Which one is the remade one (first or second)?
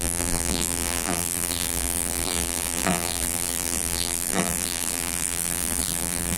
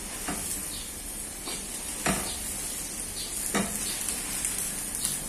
first